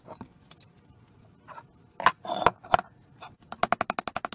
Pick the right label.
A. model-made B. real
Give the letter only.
B